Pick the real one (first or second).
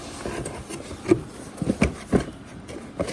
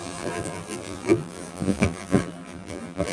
first